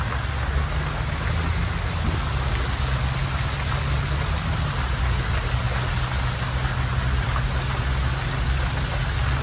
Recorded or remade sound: recorded